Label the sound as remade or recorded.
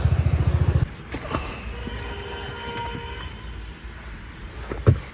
recorded